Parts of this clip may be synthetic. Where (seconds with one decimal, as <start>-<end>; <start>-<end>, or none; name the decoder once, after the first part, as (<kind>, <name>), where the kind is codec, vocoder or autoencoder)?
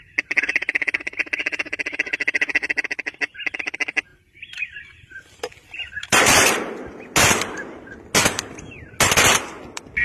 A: 4.1-6.7 (vocoder, BigVGAN v2)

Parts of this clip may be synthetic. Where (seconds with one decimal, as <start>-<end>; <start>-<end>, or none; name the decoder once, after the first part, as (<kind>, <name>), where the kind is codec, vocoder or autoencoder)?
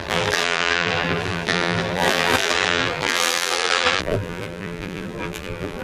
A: 0.0-5.8 (vocoder, BigVGAN v2)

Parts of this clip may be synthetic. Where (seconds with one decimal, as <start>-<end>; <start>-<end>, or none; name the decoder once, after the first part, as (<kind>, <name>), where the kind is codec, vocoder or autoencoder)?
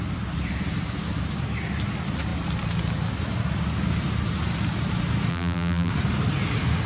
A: 5.3-5.9 (vocoder, BigVGAN v2)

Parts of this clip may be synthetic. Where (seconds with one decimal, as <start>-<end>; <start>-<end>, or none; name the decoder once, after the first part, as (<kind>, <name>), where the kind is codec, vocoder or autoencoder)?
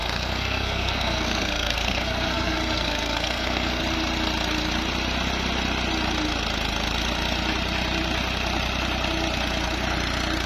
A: 0.0-3.8 (codec, SNAC)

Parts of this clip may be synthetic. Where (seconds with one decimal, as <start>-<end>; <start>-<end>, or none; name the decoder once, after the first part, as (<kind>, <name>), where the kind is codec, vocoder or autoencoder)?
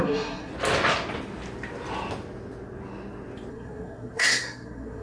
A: 0.0-0.5 (codec, SNAC); 3.5-5.0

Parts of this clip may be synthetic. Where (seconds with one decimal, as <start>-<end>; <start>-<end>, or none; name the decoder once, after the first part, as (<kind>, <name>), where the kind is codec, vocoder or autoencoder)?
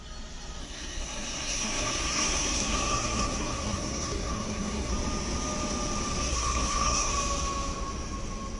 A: 0.6-4.9 (codec, SNAC); 6.3-7.1